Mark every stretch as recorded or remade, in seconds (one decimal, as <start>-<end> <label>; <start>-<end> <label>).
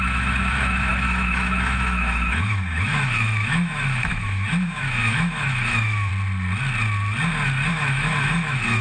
0.0-6.1 remade; 6.1-7.7 recorded; 7.7-8.8 remade